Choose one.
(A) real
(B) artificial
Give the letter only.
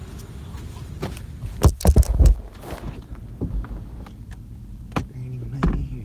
A